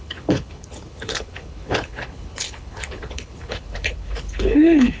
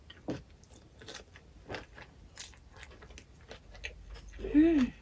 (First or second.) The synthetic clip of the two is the first